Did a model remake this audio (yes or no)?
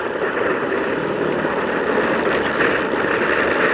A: no